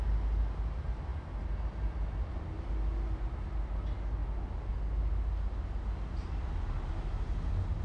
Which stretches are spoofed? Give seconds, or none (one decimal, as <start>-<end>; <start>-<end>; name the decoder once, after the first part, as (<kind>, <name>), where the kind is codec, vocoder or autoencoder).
none